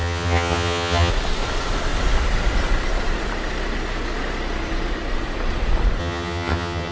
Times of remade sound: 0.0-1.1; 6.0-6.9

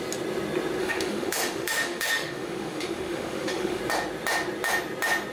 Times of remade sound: 0.8-3.8

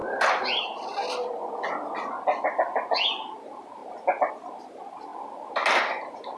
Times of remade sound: none